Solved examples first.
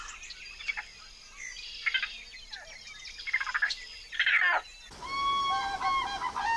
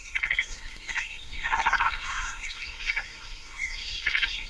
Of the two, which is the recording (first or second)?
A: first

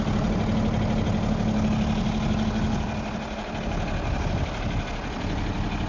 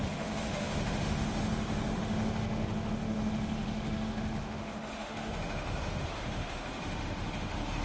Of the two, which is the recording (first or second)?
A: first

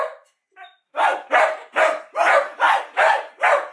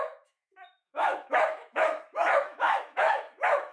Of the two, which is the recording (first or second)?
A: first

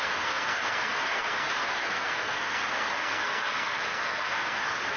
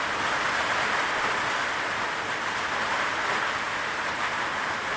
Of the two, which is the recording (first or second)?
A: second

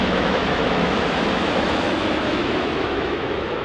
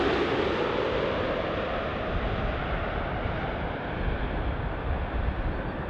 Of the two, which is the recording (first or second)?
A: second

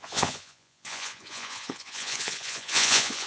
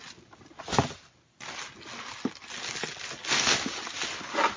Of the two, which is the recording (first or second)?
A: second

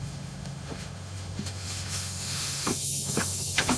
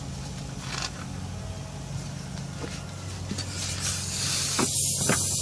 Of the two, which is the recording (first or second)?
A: second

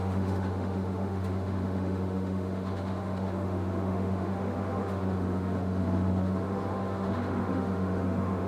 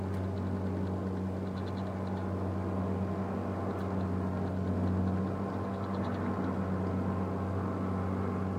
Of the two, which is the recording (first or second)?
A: second